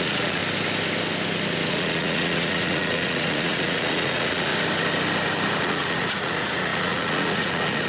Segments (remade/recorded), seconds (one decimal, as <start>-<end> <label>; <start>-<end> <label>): 0.0-0.4 remade; 0.4-1.7 recorded; 1.7-4.5 remade; 4.5-5.6 recorded; 5.6-7.9 remade